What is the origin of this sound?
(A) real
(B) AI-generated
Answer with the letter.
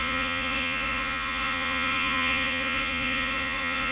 B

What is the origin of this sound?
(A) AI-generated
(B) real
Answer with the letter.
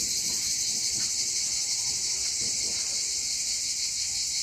B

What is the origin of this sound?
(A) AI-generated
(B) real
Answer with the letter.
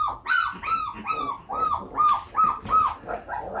B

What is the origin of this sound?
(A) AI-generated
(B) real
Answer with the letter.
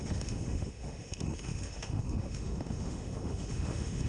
A